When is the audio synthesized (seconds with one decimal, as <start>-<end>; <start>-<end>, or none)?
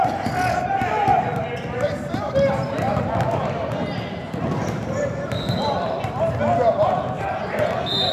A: 1.1-3.1; 4.6-6.4